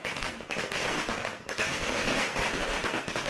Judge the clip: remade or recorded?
remade